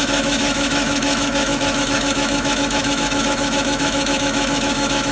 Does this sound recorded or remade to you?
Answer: remade